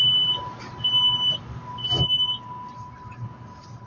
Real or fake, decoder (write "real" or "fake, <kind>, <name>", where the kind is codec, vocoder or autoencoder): real